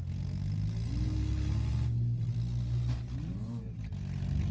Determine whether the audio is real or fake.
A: real